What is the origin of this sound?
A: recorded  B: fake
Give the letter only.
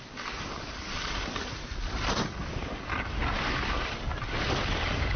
A